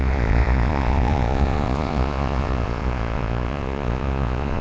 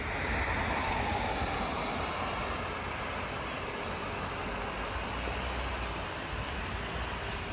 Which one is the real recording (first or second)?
second